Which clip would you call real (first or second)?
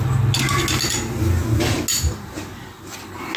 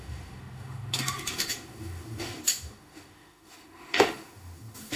first